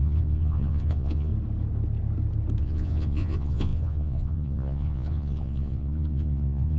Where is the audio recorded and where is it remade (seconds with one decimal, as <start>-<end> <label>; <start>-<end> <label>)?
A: 0.0-1.3 remade; 1.3-2.6 recorded; 2.6-6.8 remade